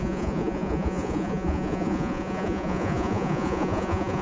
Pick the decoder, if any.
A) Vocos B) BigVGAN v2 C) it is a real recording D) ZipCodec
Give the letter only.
A